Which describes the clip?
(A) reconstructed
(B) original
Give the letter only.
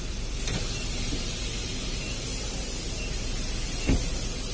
B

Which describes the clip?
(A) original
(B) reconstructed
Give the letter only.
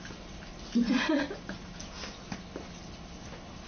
A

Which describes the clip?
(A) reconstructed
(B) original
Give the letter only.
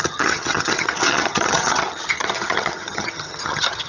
A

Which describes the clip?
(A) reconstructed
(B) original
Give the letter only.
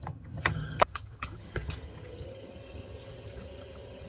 A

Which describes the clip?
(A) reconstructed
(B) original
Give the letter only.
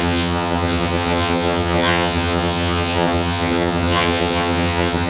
A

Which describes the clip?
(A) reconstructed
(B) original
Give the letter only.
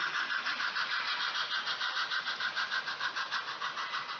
B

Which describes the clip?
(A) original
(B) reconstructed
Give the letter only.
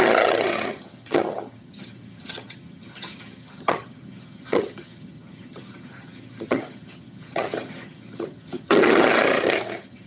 B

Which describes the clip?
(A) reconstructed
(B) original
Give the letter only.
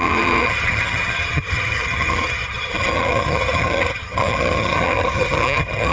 A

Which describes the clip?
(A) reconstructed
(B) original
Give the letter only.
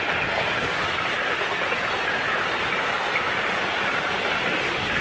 B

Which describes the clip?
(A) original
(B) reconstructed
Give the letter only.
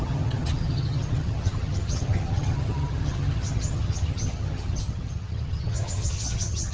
B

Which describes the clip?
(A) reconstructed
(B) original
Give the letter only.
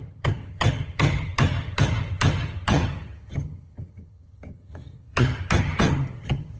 A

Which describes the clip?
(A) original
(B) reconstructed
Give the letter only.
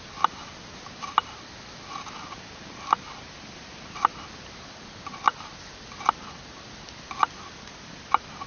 A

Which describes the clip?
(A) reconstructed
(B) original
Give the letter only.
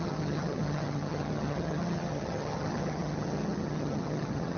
A